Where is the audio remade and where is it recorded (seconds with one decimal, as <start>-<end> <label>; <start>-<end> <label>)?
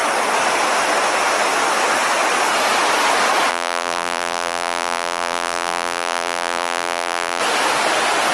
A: 0.0-3.5 recorded; 3.5-7.4 remade; 7.4-8.3 recorded